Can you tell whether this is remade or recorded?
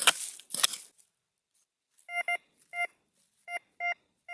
recorded